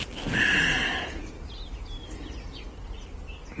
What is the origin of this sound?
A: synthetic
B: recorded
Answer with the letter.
B